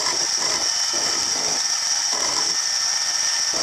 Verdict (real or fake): real